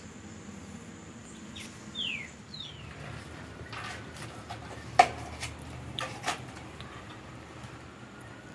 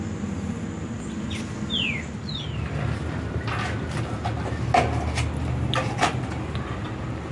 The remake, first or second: first